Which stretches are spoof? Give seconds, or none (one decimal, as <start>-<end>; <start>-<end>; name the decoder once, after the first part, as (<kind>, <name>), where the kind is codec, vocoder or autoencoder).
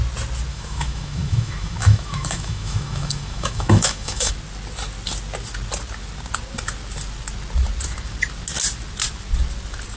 0.5-4.3 (autoencoder, DAC-VAE)